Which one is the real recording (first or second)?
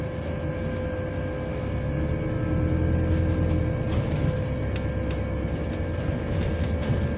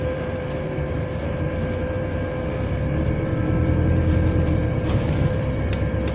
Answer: first